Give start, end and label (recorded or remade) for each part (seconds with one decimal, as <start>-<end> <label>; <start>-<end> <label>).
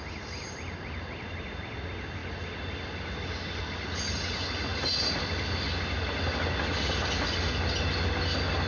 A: 0.0-8.7 recorded